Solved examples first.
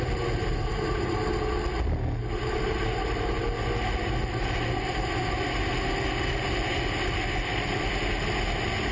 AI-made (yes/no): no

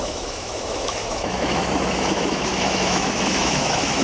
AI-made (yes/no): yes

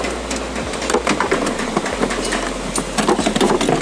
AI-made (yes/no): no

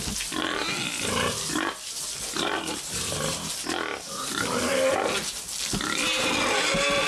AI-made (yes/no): no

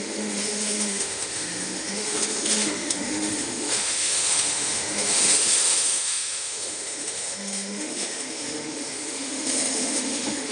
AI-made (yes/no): yes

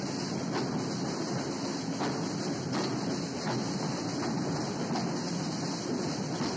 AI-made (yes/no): no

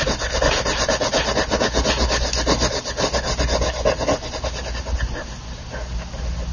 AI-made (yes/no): no